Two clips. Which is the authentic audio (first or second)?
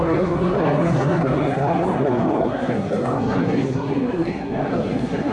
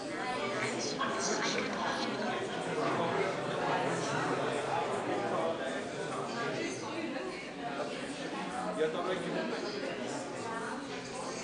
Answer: second